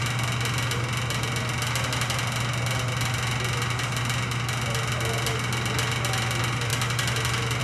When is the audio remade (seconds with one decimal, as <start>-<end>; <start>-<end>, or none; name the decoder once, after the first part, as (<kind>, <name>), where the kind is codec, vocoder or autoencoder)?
none